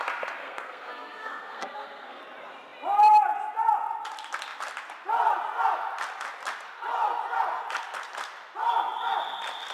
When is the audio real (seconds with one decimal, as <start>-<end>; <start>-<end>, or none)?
0.0-0.4; 2.2-9.7